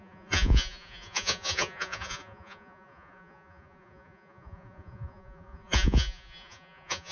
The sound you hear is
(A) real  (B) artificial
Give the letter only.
B